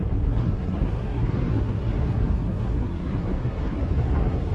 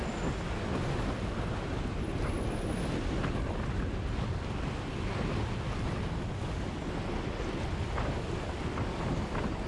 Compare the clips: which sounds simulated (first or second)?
first